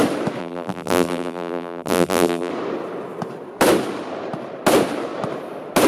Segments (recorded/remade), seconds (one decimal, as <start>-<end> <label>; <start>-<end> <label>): 0.0-0.4 recorded; 0.4-2.5 remade; 2.5-5.9 recorded